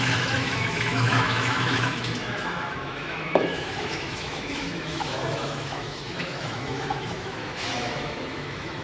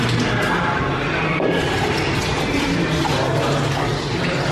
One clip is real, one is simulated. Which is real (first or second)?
second